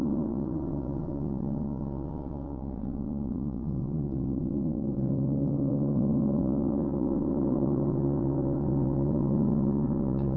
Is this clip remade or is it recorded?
remade